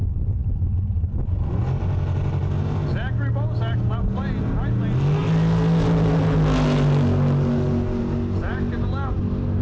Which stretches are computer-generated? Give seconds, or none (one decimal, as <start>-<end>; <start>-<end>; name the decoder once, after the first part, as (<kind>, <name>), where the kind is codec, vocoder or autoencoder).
none